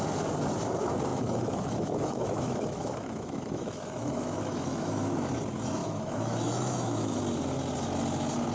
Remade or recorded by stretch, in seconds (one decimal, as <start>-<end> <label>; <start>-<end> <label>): 0.0-1.1 recorded; 1.1-5.3 remade; 5.3-5.8 recorded; 5.8-7.2 remade; 7.2-8.5 recorded